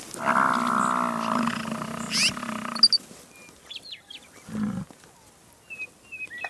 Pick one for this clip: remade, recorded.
recorded